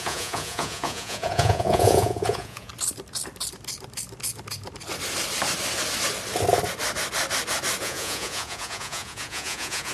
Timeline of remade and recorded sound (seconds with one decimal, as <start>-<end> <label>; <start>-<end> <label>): 0.0-2.7 remade; 2.7-7.8 recorded; 7.8-9.9 remade